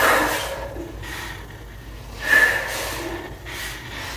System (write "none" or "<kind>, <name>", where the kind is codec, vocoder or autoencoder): none